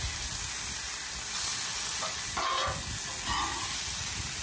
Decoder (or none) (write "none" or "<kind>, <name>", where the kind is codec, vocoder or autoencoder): none